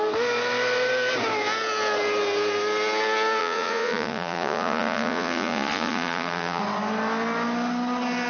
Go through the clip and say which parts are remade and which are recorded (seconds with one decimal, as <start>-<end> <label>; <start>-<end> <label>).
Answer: 0.0-3.4 recorded; 3.4-6.6 remade; 6.6-8.3 recorded